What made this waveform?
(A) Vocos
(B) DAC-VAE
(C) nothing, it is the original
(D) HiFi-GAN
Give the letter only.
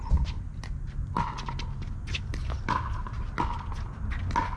C